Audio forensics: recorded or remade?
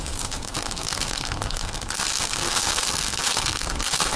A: remade